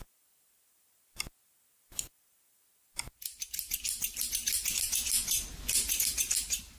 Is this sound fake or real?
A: real